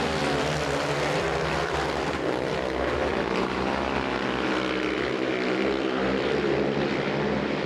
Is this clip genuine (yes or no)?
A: no